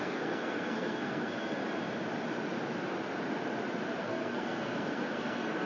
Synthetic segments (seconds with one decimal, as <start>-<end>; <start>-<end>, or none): 0.0-1.6; 4.0-5.7